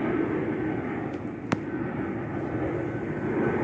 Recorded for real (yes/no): yes